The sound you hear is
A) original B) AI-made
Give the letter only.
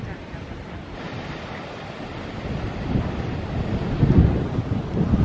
A